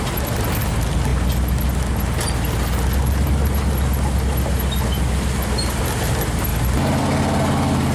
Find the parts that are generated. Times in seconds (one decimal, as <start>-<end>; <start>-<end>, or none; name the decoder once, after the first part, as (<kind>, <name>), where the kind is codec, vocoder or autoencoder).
none